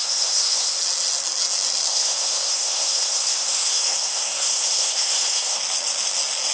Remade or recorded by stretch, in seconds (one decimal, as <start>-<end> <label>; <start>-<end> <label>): 0.0-0.8 remade; 0.8-1.9 recorded; 1.9-5.6 remade; 5.6-6.5 recorded